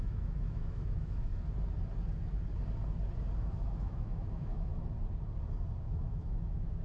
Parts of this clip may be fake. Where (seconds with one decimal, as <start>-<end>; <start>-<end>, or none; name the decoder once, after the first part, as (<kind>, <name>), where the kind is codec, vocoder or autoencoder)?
0.0-1.3 (autoencoder, DAC-VAE); 3.4-4.7; 5.8-6.8

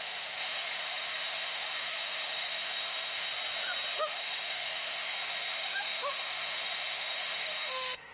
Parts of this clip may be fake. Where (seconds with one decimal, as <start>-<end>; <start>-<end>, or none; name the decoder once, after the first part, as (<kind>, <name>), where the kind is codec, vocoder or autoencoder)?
0.0-3.3 (autoencoder, DAC-VAE); 4.0-8.1

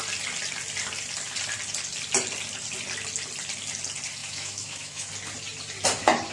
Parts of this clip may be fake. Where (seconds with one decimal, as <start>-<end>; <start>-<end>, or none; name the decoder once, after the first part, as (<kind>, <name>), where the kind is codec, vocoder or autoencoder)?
4.2-5.1 (autoencoder, DAC-VAE)